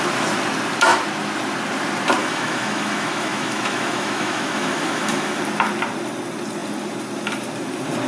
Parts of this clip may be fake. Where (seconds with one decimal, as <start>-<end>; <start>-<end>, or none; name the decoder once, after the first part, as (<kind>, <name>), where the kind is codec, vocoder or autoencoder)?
2.2-5.4 (autoencoder, DAC-VAE)